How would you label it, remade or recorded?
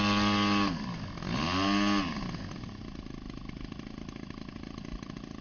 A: recorded